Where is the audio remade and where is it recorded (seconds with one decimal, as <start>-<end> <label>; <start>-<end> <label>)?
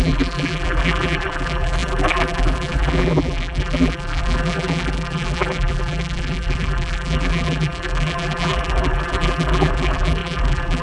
0.0-10.8 remade